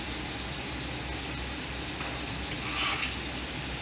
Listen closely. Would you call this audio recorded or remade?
recorded